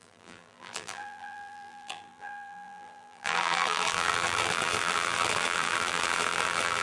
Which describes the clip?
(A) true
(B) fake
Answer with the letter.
B